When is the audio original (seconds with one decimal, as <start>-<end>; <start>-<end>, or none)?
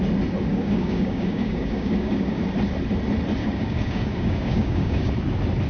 0.0-0.5; 2.4-3.4; 5.1-5.7